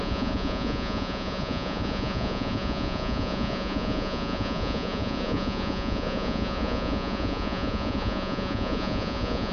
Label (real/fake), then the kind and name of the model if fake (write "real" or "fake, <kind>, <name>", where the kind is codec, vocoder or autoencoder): fake, vocoder, Vocos